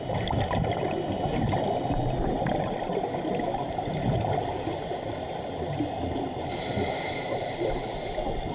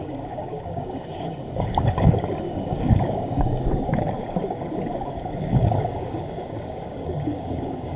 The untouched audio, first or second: first